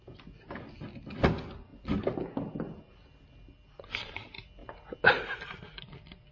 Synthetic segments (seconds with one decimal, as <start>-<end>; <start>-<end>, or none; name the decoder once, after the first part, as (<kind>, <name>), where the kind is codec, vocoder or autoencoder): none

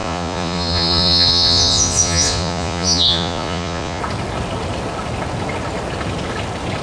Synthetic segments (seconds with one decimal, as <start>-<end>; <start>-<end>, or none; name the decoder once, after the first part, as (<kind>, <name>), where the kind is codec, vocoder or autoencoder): 0.0-4.0 (vocoder, Vocos)

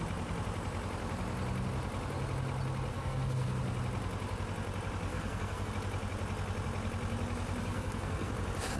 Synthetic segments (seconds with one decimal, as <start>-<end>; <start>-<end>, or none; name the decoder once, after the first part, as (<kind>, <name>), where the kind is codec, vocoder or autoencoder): 2.9-3.6 (codec, SNAC); 5.1-5.7; 7.6-8.3